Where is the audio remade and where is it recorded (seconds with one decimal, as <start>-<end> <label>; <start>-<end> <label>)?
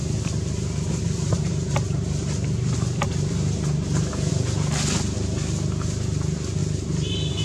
0.0-7.4 recorded